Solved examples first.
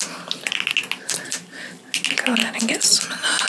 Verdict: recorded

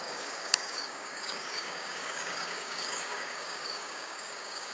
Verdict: remade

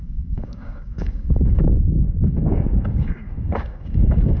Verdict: remade